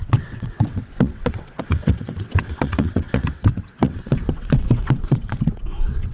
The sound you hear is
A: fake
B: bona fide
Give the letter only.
A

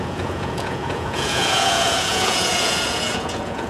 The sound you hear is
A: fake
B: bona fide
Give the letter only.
A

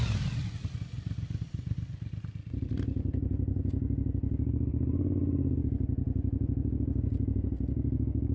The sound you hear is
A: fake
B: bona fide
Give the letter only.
B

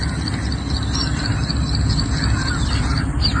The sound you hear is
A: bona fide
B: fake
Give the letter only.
A